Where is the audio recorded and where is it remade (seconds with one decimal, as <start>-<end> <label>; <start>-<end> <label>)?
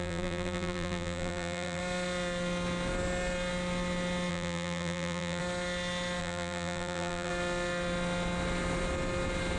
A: 0.0-1.8 remade; 1.8-4.3 recorded; 4.3-5.4 remade; 5.4-6.2 recorded; 6.2-7.3 remade; 7.3-9.6 recorded